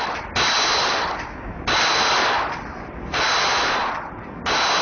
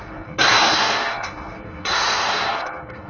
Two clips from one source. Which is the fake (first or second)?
second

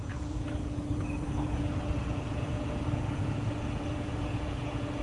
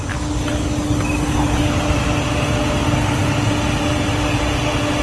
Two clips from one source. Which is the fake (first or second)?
first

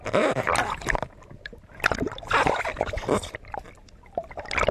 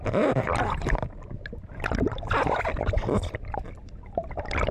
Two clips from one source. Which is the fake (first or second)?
second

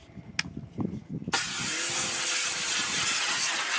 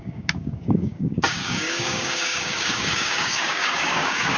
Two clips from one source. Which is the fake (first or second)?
second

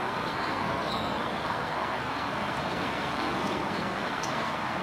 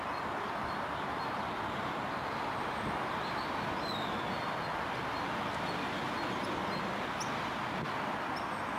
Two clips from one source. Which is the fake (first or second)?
first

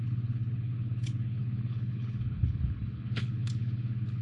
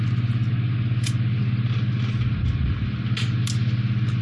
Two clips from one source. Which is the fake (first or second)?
first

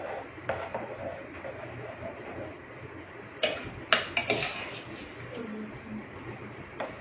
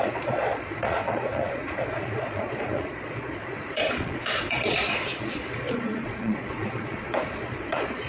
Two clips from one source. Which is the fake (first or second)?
second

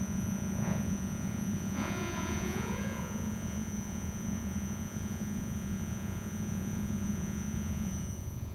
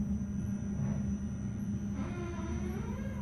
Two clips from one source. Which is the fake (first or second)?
first